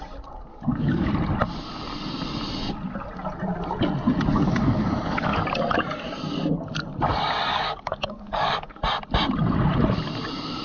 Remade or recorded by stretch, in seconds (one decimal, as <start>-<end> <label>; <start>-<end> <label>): 0.0-0.5 recorded; 0.5-1.1 remade; 1.1-4.3 recorded; 4.3-5.4 remade; 5.4-7.5 recorded; 7.5-8.8 remade; 8.8-10.6 recorded